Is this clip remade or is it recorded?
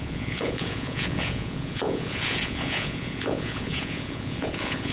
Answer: remade